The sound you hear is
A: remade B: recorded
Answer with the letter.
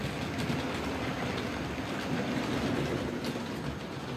B